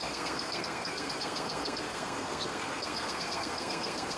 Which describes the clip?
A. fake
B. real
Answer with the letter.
A